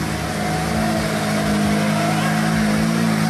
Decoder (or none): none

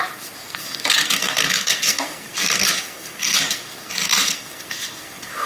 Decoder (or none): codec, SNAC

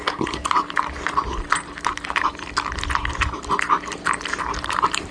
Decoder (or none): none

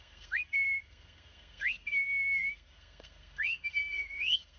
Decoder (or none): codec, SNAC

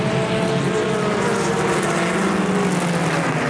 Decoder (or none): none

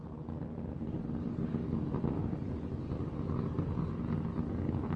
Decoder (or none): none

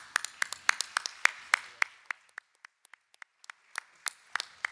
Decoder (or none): none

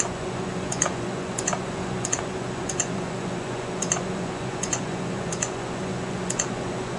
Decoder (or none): vocoder, Vocos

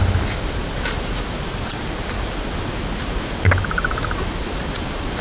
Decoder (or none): none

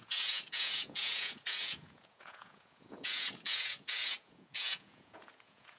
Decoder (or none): vocoder, Vocos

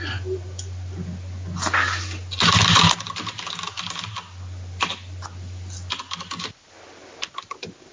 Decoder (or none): none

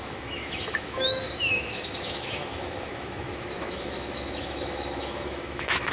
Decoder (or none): autoencoder, DAC-VAE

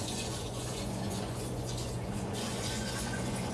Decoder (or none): vocoder, Vocos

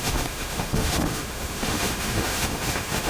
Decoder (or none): autoencoder, DAC-VAE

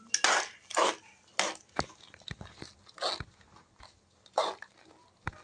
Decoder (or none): none